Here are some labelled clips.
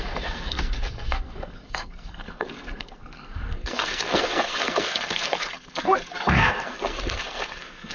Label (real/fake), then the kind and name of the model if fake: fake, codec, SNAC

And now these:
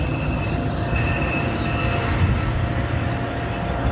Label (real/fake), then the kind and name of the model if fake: real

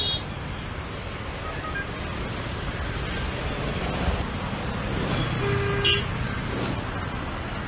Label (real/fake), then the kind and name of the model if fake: real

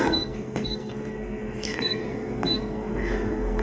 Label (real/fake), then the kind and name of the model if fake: fake, codec, SNAC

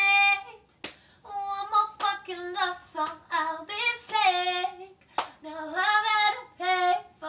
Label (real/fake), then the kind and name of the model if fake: real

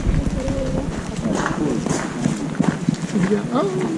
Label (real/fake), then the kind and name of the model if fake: real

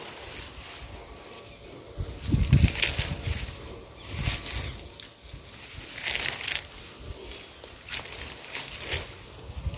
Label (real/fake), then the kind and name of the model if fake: real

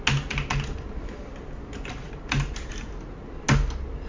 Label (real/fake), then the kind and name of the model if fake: real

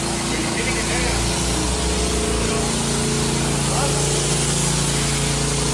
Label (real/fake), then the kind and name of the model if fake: real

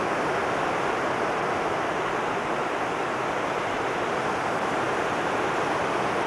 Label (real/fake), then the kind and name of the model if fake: real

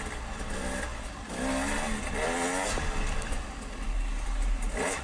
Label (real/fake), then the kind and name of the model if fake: real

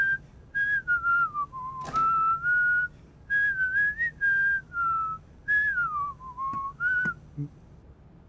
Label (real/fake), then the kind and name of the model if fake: real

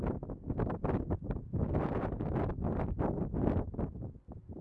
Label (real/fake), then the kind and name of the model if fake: real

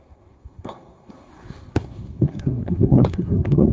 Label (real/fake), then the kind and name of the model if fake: fake, codec, SNAC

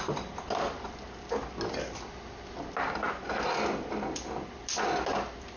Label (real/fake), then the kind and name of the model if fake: real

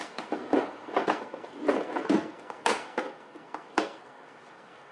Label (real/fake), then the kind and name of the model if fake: fake, codec, SNAC